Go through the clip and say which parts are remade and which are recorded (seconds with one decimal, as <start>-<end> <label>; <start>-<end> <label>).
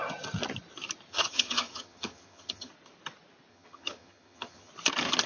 0.0-1.1 recorded; 1.1-2.7 remade; 2.7-3.5 recorded; 3.5-4.7 remade; 4.7-5.3 recorded